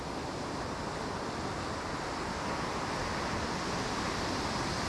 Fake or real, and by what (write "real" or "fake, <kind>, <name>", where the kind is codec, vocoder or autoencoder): real